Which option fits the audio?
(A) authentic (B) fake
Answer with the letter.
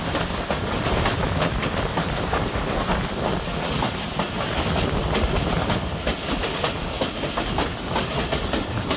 A